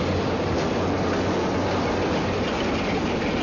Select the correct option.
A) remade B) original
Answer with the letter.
B